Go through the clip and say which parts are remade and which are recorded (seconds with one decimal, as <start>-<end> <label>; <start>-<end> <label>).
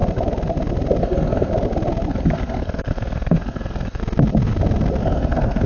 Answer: 0.0-1.0 recorded; 1.0-1.5 remade; 1.5-2.1 recorded; 2.1-4.0 remade; 4.0-5.0 recorded; 5.0-5.7 remade